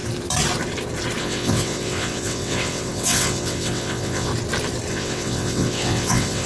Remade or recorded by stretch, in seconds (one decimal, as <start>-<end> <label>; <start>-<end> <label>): 0.0-1.2 recorded; 1.2-4.3 remade; 4.3-4.9 recorded; 4.9-6.5 remade